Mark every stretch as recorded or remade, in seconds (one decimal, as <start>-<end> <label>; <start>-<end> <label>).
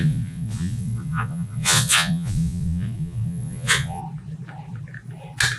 0.0-4.0 remade; 4.0-5.6 recorded